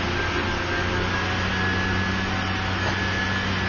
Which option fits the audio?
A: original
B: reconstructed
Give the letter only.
A